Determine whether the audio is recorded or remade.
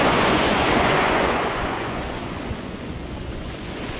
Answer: remade